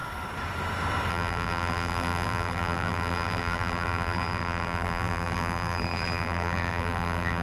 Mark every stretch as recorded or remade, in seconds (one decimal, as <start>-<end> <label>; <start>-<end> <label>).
0.0-1.1 recorded; 1.1-7.4 remade